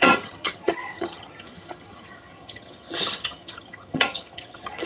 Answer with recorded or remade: remade